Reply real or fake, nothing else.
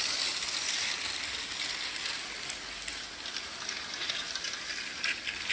real